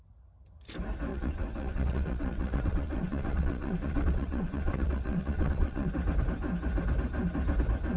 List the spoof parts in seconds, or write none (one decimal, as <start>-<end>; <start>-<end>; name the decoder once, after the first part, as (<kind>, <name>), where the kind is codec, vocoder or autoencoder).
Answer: 1.1-5.9 (vocoder, WaveNeXt)